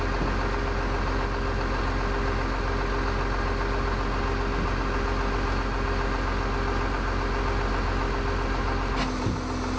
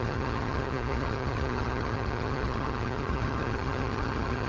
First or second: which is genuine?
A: first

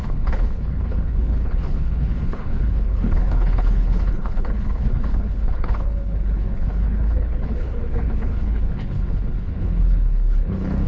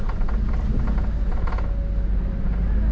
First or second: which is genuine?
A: second